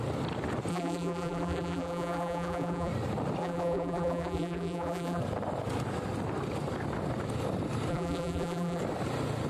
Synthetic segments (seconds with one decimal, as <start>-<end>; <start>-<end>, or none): 0.7-2.9; 3.4-5.2; 7.9-8.8